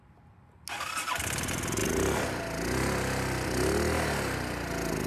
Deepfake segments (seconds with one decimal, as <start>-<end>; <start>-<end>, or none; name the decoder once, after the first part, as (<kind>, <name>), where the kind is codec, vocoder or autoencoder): none